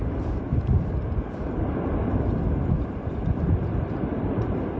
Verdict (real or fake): fake